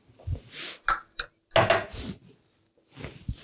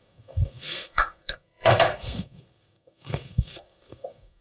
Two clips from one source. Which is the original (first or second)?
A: first